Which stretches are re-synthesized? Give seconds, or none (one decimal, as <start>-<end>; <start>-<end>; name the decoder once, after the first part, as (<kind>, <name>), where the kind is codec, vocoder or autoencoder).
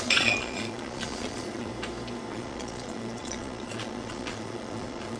0.0-1.7 (vocoder, Vocos); 2.3-5.2